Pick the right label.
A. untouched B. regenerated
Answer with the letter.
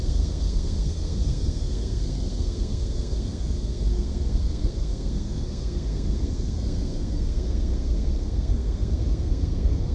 B